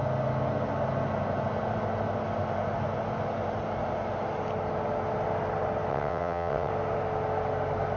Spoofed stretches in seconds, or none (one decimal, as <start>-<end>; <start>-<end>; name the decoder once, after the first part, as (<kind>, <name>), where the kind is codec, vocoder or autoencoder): 5.9-6.7 (vocoder, WaveNeXt)